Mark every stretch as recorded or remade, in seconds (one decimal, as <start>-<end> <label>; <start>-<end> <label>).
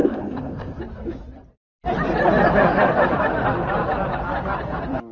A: 0.0-0.8 remade; 0.8-5.1 recorded